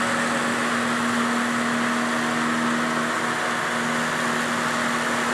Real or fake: real